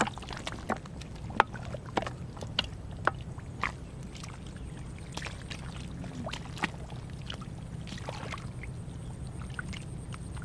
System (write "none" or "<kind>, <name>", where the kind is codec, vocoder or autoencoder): none